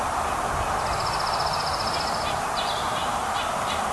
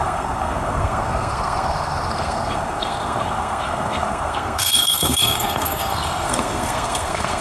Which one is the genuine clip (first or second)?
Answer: first